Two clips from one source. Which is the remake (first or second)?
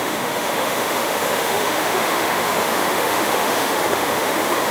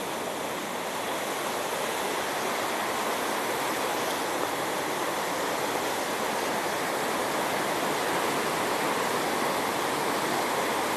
first